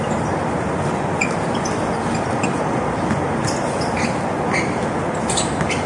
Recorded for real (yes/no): yes